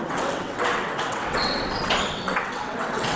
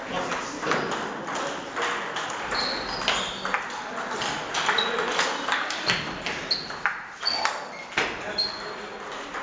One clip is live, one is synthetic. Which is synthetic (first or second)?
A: first